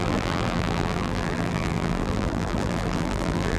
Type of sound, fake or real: fake